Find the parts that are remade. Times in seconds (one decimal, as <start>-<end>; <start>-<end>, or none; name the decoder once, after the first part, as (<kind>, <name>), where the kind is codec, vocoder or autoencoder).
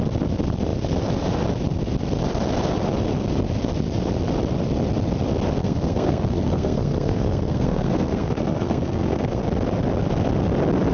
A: 5.6-9.4 (codec, SNAC)